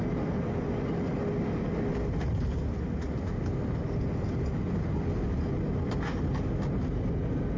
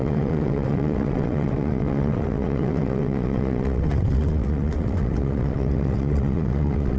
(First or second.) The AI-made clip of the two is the second